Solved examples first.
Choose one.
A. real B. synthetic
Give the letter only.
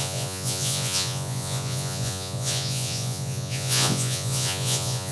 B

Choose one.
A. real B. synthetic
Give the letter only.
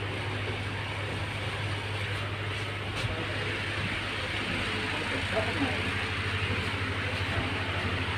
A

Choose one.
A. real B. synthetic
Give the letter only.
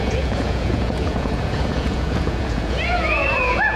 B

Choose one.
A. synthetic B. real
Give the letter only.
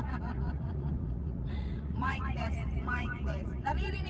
A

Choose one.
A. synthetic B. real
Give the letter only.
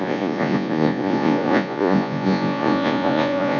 A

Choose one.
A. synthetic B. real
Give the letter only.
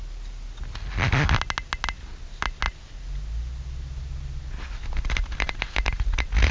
B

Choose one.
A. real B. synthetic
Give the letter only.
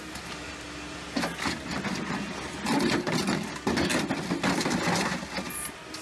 A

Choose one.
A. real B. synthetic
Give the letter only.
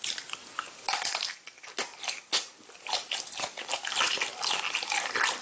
A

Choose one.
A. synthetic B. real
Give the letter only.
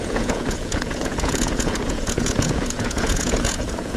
A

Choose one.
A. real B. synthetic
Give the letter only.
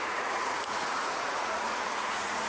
B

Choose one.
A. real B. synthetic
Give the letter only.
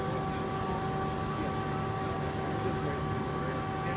A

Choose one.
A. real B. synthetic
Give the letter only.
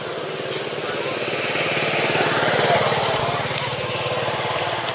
A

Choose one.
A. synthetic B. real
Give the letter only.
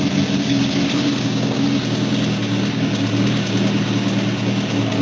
B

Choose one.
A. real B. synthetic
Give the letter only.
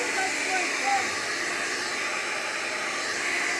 A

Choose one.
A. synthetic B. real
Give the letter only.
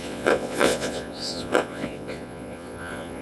A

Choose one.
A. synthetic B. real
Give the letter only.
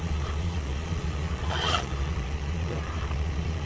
A